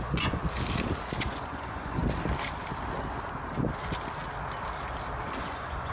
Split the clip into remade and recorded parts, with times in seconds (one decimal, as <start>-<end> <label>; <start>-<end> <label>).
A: 0.0-0.4 remade; 0.4-1.2 recorded; 1.2-2.0 remade; 2.0-5.4 recorded; 5.4-5.9 remade